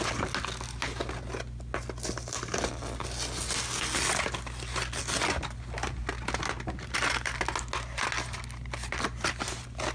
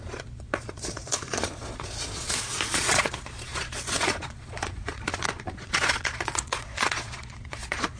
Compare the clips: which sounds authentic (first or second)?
first